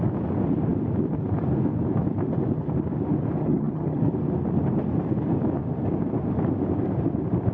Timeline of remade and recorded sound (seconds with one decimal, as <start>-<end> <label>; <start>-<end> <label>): 0.0-3.4 recorded; 3.4-4.0 remade; 4.0-7.5 recorded

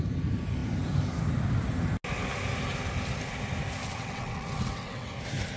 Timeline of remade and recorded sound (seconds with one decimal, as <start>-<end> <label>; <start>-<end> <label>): 0.0-3.8 recorded; 3.8-5.1 remade; 5.1-5.6 recorded